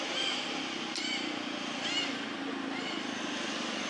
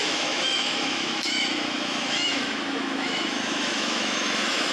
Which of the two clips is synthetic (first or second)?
second